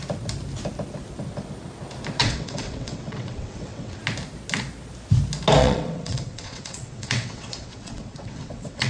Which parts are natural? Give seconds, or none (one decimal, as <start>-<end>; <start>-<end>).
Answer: 0.0-2.2; 4.0-5.6